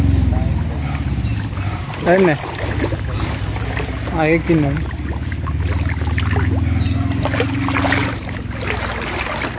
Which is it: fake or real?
real